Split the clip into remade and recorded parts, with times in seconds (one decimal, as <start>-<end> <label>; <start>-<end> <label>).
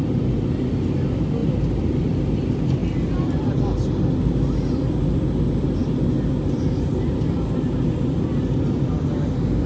0.0-9.7 recorded